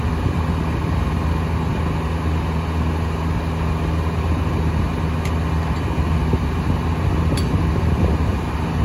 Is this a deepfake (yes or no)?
no